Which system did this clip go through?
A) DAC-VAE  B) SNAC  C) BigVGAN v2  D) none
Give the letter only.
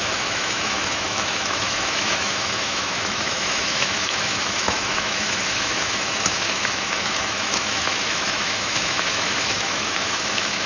A